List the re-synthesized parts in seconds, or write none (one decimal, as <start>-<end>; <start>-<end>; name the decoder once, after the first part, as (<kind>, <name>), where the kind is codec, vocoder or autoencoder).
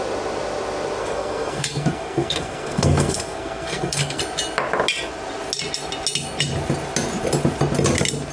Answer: 1.0-4.2 (codec, SNAC)